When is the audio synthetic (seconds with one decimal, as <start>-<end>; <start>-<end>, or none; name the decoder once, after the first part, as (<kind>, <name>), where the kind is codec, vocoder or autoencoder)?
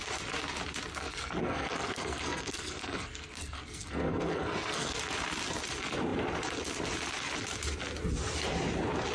1.0-5.0 (codec, SNAC)